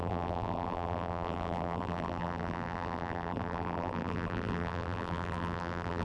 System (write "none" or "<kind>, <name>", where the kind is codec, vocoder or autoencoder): vocoder, BigVGAN v2